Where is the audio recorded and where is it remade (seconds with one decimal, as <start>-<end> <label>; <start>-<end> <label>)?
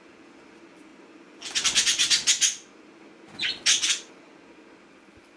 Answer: 0.0-5.4 remade